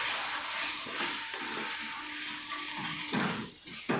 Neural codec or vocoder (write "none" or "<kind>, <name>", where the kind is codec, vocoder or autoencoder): none